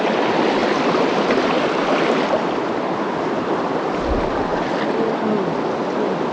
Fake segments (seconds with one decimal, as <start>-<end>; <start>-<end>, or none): none

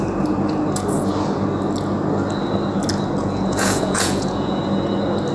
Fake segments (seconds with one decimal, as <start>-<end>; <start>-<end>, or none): 3.2-4.6

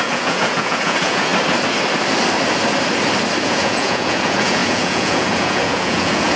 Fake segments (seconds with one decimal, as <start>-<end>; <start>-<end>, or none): 0.0-1.3; 3.4-6.4

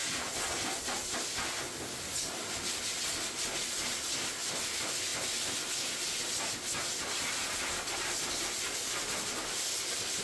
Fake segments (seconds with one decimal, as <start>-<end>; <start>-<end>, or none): none

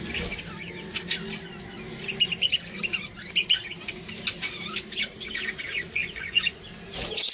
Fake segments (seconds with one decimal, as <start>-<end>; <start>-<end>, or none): 6.0-6.6

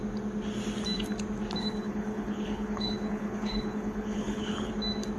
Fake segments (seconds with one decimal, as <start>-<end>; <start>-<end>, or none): 1.6-4.7

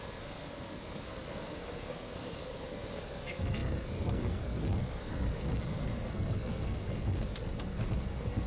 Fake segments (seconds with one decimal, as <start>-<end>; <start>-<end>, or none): 0.0-8.5